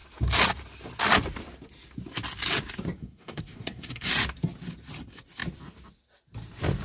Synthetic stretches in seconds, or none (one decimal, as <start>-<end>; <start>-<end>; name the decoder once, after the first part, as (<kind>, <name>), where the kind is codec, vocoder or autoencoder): 3.0-4.1 (codec, SNAC)